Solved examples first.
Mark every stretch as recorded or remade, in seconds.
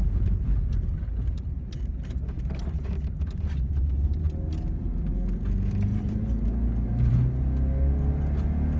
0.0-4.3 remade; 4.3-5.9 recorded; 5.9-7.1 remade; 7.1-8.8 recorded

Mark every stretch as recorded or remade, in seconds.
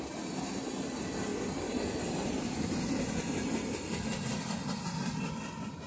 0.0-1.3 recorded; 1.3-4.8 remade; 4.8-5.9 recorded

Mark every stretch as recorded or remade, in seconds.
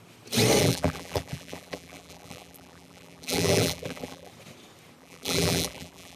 0.0-0.6 recorded; 0.6-4.3 remade; 4.3-5.0 recorded; 5.0-6.2 remade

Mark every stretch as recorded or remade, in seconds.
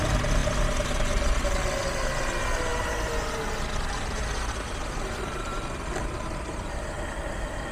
0.0-7.7 recorded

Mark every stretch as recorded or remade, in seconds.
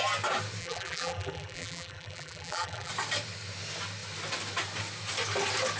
0.0-0.6 recorded; 0.6-2.9 remade; 2.9-5.8 recorded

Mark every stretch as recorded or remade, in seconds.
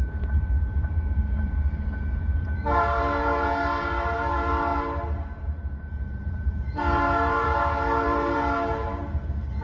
0.0-9.6 remade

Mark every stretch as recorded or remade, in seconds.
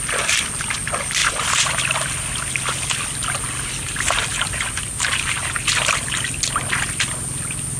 0.0-1.2 recorded; 1.2-1.7 remade; 1.7-4.3 recorded; 4.3-5.3 remade; 5.3-7.8 recorded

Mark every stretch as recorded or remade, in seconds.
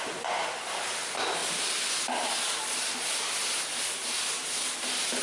0.0-1.4 remade; 1.4-2.5 recorded; 2.5-4.4 remade; 4.4-5.2 recorded